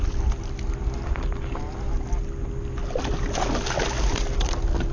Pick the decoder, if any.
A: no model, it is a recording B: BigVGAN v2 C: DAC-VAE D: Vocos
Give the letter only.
A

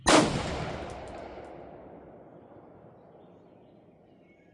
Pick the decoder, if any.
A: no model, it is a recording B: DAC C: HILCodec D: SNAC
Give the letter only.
A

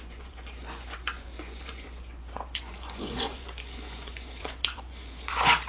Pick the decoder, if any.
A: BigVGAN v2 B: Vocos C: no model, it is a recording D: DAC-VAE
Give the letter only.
B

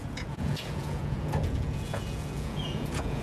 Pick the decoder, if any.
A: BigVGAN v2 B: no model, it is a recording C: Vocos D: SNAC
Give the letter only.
C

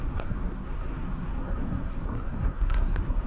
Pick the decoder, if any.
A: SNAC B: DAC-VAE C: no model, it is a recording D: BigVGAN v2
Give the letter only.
A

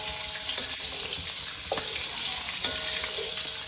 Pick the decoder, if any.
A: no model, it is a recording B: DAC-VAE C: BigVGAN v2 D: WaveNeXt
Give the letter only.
A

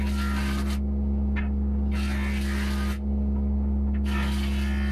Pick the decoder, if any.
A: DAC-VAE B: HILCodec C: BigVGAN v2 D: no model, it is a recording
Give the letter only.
D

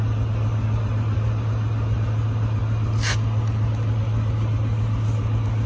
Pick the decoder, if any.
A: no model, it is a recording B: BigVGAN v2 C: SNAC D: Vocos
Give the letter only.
A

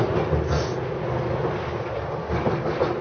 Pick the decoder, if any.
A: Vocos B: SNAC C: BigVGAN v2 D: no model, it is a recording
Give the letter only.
D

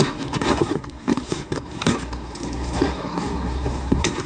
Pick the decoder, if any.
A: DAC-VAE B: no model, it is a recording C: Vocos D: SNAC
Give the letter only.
D